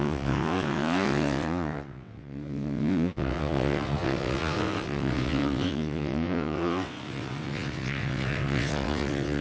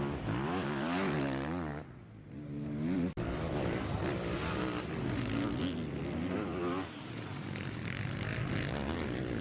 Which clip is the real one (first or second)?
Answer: second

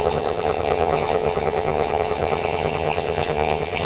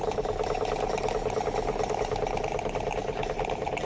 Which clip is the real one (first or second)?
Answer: second